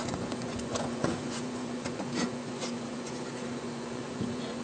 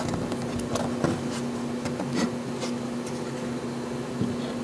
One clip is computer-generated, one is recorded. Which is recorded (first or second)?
second